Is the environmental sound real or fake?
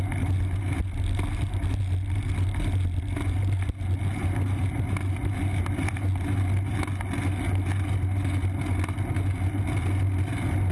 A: real